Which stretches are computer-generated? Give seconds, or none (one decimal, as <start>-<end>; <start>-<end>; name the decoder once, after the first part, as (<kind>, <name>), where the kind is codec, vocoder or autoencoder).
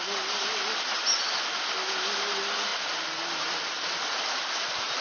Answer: none